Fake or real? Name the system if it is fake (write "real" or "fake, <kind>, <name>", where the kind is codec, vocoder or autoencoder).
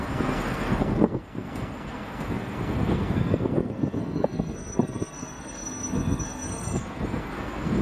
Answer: fake, codec, SNAC